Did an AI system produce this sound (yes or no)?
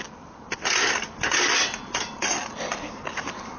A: yes